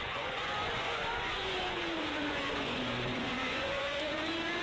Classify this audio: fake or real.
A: fake